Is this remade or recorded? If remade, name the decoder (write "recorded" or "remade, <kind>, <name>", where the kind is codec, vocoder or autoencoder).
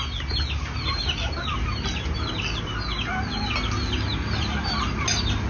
recorded